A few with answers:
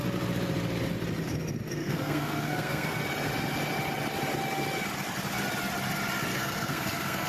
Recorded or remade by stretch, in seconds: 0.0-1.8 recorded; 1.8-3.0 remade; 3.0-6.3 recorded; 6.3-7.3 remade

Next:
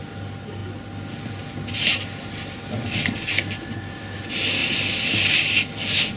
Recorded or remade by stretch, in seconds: 0.0-6.2 recorded